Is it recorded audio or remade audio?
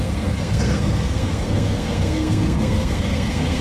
remade